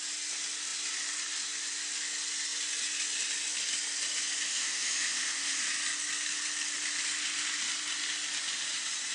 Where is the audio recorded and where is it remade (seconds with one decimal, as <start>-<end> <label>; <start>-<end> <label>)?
0.0-4.5 recorded; 4.5-5.6 remade; 5.6-9.1 recorded